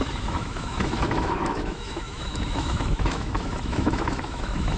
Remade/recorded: remade